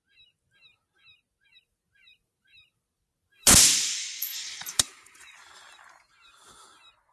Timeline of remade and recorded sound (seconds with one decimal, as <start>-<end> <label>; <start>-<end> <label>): 0.0-1.5 recorded; 1.5-5.3 remade; 5.3-7.1 recorded